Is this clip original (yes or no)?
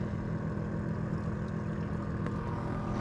yes